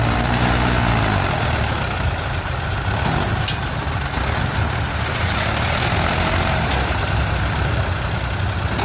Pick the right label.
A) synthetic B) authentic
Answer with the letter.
B